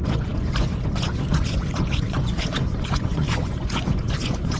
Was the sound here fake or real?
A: fake